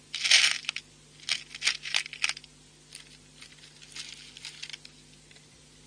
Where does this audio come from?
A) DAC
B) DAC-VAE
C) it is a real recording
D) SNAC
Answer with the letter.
C